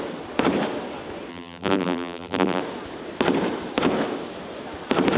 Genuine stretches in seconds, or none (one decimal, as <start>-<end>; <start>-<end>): 0.0-1.3; 2.6-5.2